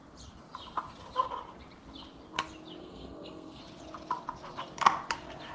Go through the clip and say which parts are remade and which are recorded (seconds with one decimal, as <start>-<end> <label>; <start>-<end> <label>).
0.0-2.8 recorded; 2.8-3.6 remade; 3.6-5.5 recorded